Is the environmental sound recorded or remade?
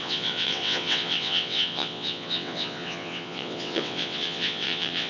remade